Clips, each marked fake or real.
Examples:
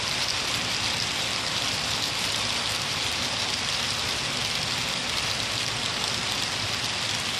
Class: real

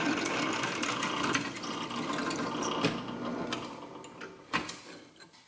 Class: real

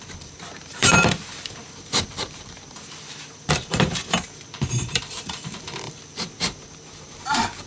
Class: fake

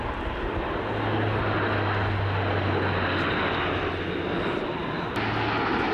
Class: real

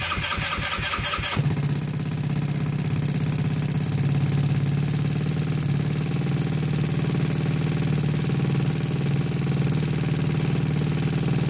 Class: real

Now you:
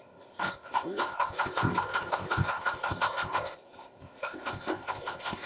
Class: fake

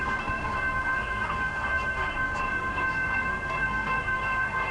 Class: fake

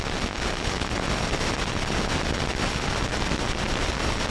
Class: real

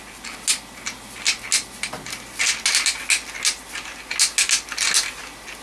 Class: real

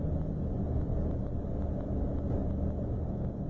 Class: real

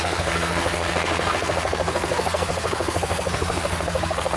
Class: fake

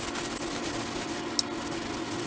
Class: real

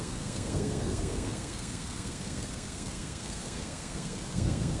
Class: fake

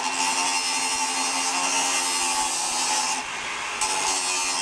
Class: real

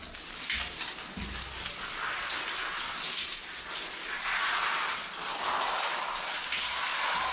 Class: real